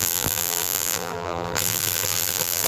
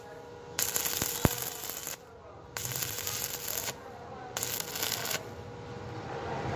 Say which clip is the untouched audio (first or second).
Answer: second